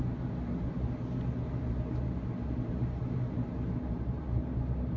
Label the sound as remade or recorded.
recorded